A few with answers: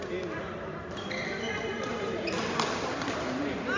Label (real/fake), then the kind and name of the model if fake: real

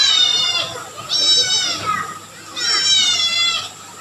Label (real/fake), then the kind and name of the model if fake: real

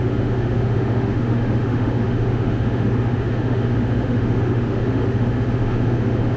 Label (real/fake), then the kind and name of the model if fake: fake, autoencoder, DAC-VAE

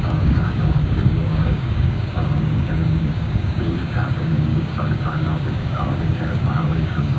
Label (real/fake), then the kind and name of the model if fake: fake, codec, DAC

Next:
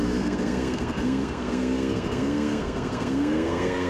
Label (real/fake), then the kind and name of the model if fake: fake, codec, SNAC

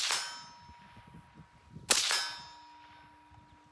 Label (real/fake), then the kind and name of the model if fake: real